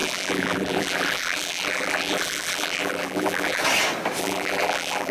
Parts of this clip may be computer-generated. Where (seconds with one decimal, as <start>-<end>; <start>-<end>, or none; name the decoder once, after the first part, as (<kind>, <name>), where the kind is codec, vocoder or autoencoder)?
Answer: 0.0-3.6 (vocoder, BigVGAN v2); 4.2-5.1